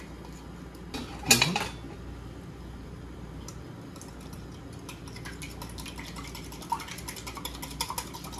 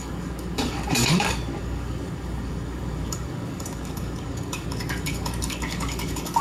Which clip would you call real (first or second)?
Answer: first